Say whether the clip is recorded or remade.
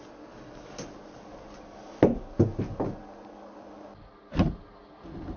recorded